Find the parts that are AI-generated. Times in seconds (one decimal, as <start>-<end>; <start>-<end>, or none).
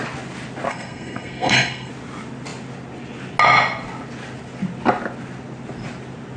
0.7-1.9